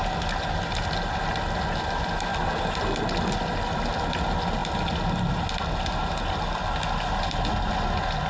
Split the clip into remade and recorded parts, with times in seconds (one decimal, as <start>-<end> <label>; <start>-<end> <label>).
0.0-8.3 recorded